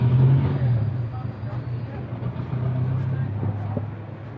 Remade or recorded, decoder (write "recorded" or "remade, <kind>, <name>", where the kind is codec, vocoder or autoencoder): recorded